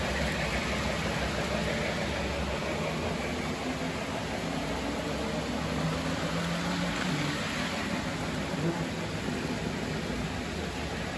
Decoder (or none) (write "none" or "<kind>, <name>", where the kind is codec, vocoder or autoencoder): none